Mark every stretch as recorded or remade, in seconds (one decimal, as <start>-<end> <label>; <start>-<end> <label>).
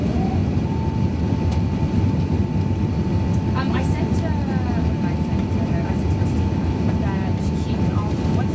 0.0-8.5 recorded